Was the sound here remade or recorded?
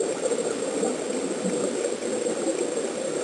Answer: recorded